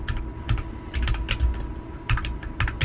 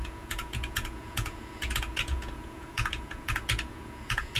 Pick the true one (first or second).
first